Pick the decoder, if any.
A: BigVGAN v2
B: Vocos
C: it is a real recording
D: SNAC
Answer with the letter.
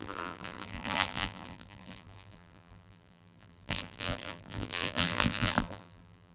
A